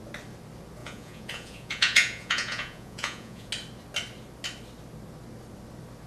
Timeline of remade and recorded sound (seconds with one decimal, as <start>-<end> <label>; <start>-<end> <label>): 0.0-0.8 recorded; 0.8-3.5 remade; 3.5-6.1 recorded

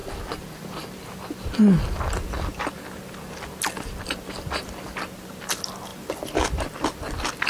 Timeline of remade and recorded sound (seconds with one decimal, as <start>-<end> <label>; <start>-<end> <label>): 0.0-7.5 recorded

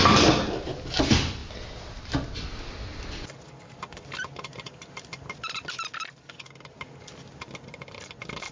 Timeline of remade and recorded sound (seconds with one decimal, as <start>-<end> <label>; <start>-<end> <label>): 0.0-8.5 recorded